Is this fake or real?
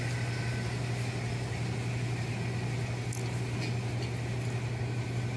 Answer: real